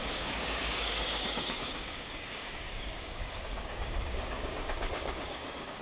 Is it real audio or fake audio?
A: fake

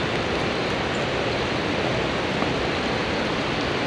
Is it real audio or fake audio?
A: real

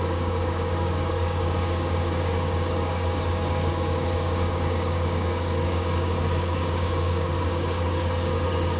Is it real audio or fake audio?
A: fake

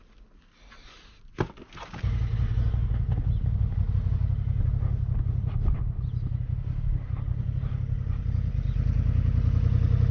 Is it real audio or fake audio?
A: real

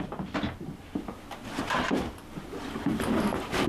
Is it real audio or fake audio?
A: real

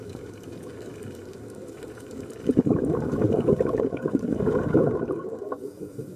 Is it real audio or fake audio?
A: fake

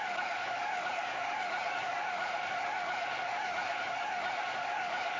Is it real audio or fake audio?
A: fake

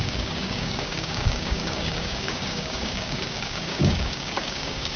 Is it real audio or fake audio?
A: fake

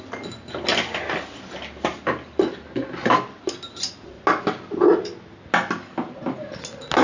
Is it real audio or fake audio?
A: real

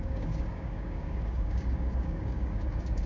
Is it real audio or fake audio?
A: fake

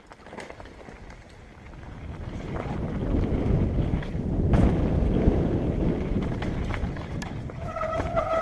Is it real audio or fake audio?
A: real